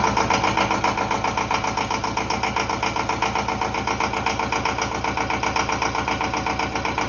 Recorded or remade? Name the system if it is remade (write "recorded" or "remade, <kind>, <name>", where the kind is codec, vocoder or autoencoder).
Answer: recorded